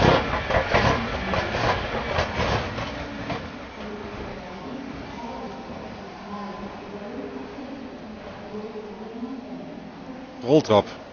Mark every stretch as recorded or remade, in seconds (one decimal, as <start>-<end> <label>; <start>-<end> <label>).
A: 0.0-4.3 recorded; 4.3-4.9 remade; 4.9-11.1 recorded